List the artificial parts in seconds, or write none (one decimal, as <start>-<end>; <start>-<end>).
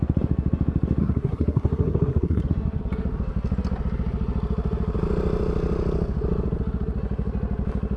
1.0-2.4